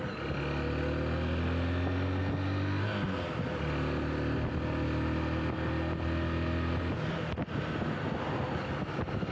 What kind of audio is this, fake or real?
real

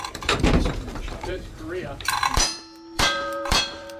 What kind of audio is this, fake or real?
fake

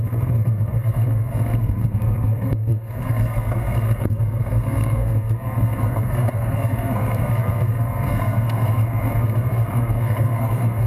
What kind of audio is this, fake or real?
fake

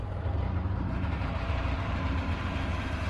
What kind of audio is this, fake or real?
fake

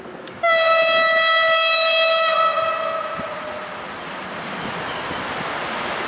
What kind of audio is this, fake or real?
real